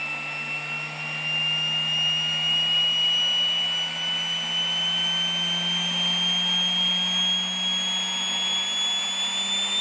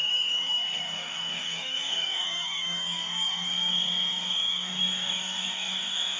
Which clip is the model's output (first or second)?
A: second